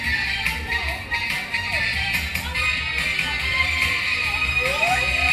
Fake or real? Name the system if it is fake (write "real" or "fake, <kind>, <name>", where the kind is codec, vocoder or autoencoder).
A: fake, vocoder, BigVGAN v2